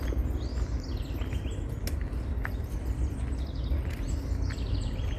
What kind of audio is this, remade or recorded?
recorded